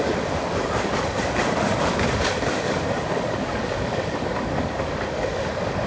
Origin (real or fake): fake